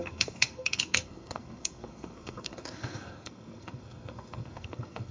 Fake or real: fake